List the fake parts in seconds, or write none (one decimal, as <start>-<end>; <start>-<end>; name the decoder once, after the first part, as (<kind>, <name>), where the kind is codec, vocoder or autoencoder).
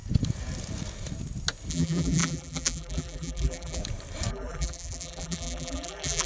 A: 1.7-3.8 (vocoder, BigVGAN v2); 4.3-6.3